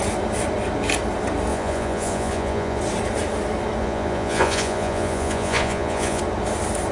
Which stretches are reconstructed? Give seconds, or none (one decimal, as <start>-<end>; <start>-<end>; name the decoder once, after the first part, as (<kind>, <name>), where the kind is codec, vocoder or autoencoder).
1.5-2.8 (vocoder, Vocos); 3.8-6.2